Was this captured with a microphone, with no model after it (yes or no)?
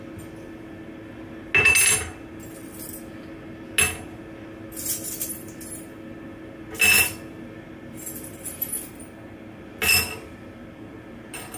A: yes